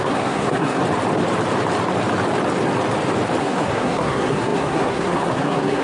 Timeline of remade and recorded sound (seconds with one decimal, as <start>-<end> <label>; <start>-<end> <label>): 0.0-0.8 remade; 0.8-3.4 recorded; 3.4-5.8 remade